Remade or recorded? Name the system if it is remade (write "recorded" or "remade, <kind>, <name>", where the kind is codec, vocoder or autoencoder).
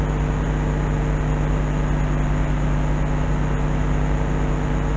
recorded